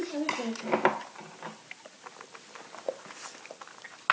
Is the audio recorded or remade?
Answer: recorded